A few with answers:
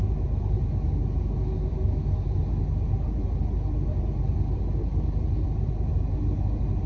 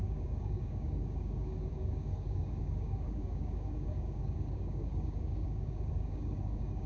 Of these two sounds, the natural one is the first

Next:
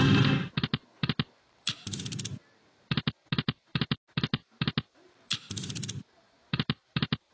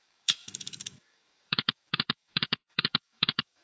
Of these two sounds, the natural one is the first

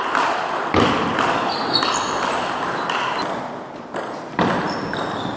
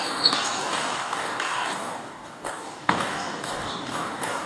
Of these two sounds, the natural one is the first